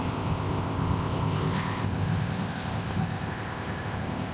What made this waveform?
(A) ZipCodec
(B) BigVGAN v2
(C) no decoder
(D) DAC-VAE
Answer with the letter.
A